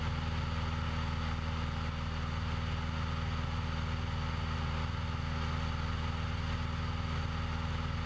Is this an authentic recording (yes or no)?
yes